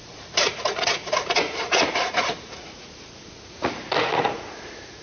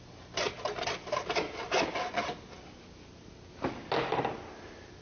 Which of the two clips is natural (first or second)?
second